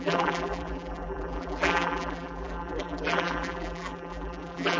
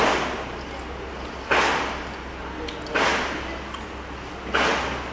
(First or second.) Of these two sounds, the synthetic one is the first